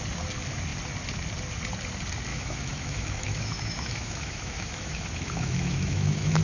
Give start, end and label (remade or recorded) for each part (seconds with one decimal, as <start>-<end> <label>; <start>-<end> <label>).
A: 0.0-2.3 recorded; 2.3-6.4 remade